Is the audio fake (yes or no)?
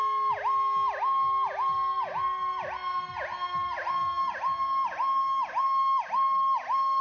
no